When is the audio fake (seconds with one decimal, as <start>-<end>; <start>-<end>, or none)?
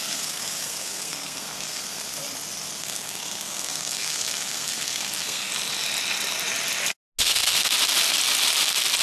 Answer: 0.0-2.2; 2.8-5.5; 7.2-7.7